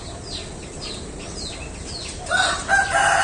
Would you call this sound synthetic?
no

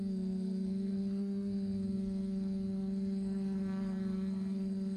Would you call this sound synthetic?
yes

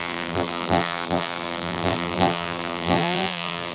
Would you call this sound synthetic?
yes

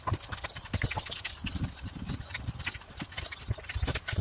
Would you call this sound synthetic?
no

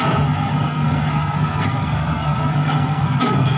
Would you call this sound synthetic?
yes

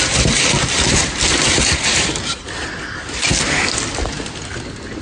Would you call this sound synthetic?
no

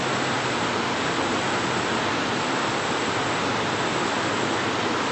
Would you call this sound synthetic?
no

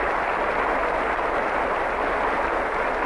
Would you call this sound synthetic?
no